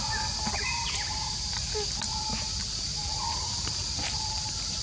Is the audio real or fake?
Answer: fake